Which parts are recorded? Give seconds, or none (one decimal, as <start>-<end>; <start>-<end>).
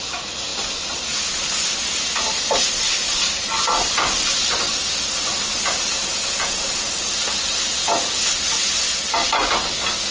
0.0-5.9; 6.9-10.1